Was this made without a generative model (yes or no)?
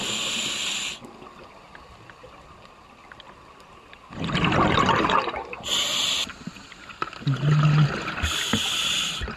yes